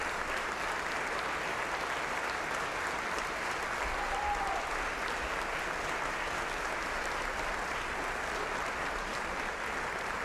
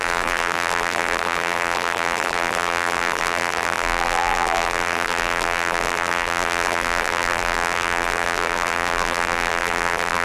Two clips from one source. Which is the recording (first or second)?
first